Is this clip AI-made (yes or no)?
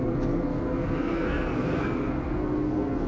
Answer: yes